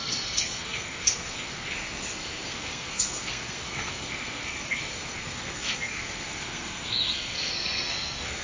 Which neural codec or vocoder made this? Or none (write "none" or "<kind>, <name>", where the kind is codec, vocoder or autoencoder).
codec, SNAC